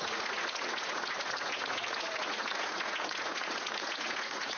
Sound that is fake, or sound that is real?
fake